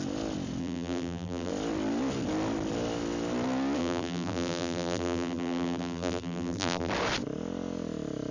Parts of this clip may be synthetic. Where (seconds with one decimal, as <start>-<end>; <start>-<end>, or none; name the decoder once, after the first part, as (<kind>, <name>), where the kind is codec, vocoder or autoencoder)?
0.6-1.5 (vocoder, BigVGAN v2); 3.8-6.9